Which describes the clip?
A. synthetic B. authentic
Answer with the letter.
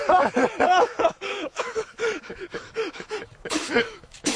A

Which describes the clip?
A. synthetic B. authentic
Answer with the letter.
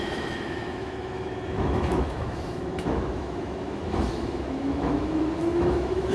A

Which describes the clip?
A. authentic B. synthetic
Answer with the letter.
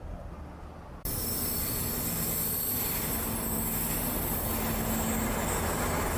A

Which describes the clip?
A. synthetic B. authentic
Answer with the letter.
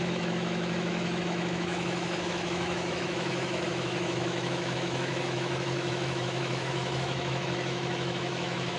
A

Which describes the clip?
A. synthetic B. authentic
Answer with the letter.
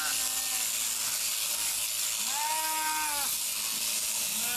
B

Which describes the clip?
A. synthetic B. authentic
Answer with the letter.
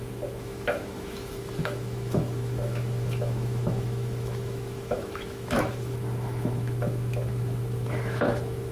A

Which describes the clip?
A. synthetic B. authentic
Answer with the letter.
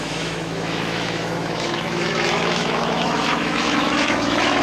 A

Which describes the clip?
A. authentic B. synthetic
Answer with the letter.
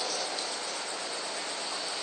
A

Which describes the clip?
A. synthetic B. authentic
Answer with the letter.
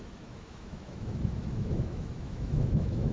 A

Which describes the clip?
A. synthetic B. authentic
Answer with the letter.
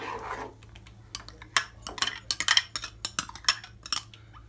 B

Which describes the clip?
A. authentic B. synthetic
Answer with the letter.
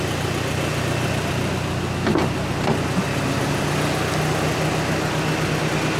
A